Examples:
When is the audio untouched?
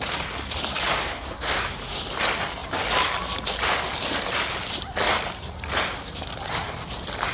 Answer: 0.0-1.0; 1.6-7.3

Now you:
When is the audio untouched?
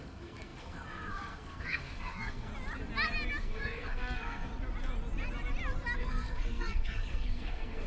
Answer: 2.5-3.4; 4.5-6.0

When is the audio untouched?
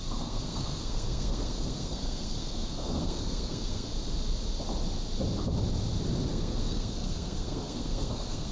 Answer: 3.9-6.3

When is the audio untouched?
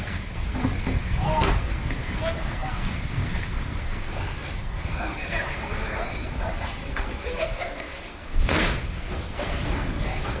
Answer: none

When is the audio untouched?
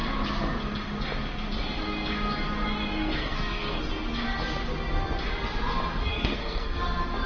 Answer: 0.0-3.0; 3.8-6.1; 6.8-7.3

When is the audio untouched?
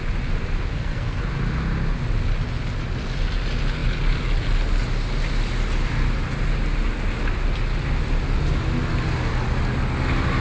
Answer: 0.0-0.7; 1.2-10.4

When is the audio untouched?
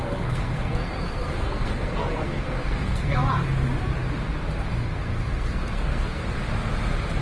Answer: 3.2-4.7; 6.2-7.2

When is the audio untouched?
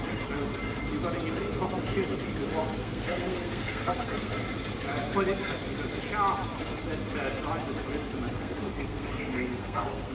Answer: 0.0-2.8; 4.3-8.3